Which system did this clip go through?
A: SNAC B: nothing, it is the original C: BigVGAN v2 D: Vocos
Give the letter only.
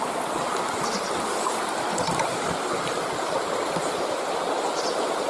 B